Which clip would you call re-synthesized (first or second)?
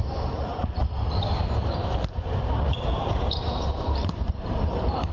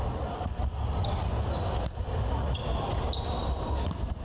first